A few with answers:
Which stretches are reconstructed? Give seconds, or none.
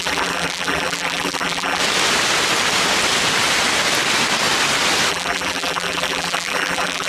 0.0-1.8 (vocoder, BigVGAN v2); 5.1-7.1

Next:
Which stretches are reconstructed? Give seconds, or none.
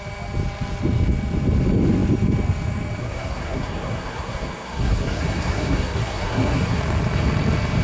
3.0-6.8 (codec, SNAC)